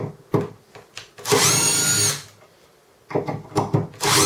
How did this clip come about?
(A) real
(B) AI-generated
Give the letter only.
A